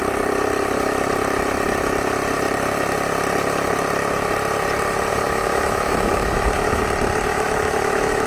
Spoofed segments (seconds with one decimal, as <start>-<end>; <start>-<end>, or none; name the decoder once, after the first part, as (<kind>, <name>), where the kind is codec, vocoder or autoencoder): 5.1-6.8 (autoencoder, DAC-VAE); 7.3-8.3